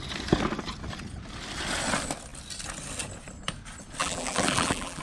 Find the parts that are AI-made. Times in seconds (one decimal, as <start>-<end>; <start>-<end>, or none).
4.0-5.0